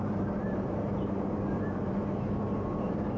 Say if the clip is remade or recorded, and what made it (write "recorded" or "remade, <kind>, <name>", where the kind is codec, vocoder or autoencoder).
remade, vocoder, BigVGAN v2